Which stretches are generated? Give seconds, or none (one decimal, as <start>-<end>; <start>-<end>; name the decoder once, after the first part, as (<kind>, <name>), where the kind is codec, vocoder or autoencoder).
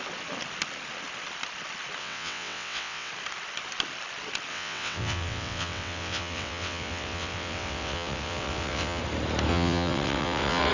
2.0-3.1 (vocoder, WaveNeXt); 4.5-9.0; 9.5-10.7